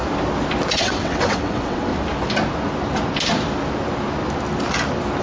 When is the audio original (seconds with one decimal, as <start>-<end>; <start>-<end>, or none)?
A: 0.0-0.7; 1.9-5.2